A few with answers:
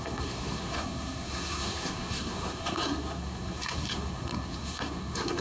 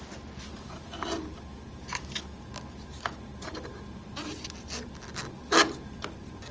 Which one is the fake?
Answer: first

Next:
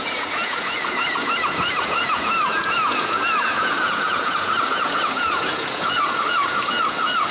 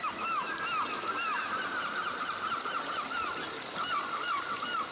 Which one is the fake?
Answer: first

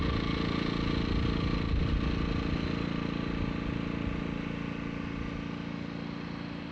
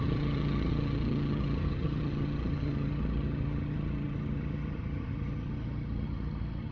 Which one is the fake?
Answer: second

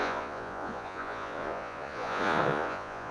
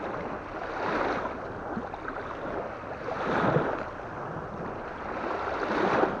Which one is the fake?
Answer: first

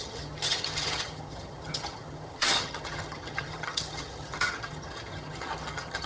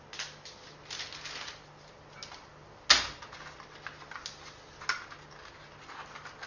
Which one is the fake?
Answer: first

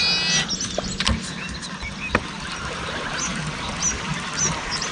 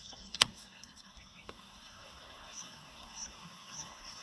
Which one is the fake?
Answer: second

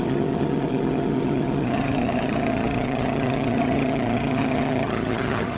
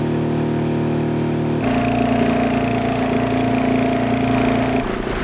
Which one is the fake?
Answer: first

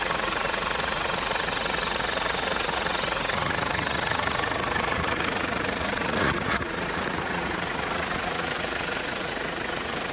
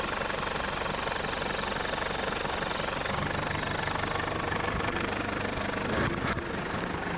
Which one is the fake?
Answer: first